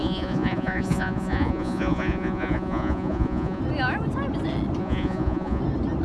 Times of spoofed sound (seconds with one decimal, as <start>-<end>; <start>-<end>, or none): 0.0-3.6; 4.8-5.6